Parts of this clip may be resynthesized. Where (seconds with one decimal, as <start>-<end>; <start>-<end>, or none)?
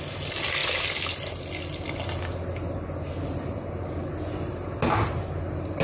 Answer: none